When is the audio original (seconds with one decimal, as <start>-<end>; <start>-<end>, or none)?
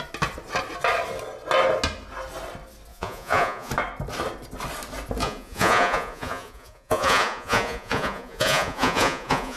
0.0-2.9; 3.7-5.2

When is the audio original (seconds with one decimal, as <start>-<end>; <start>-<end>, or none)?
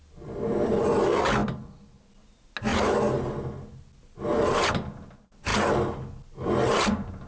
0.0-7.3